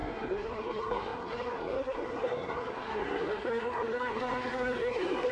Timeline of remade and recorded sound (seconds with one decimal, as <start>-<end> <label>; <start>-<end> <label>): 0.0-5.3 remade